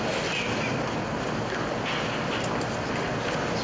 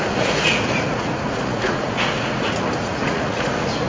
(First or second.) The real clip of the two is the first